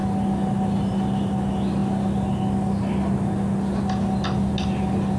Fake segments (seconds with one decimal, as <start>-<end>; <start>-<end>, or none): none

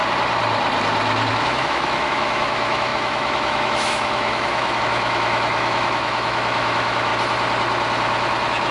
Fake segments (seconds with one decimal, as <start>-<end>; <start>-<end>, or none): 1.3-7.1

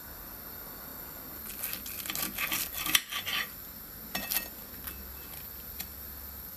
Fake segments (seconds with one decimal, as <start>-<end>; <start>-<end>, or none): none

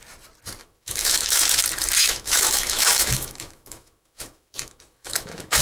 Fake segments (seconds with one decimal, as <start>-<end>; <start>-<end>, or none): 0.6-1.6; 2.0-5.6